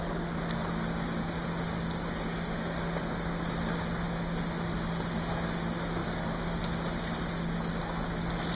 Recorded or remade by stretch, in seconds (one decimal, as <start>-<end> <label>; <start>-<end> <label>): 0.0-8.5 recorded